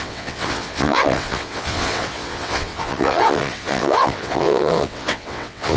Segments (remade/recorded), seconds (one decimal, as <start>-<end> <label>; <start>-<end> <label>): 0.0-5.8 remade